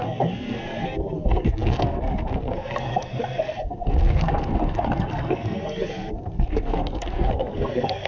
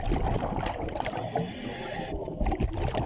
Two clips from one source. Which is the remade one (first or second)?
first